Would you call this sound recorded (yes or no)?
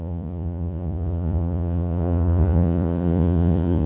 no